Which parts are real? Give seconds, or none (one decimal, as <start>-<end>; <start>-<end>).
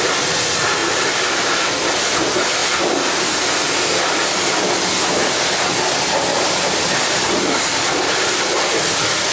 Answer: 0.0-6.3; 7.9-9.3